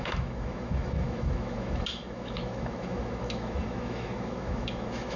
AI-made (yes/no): yes